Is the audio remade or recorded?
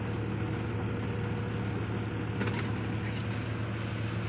recorded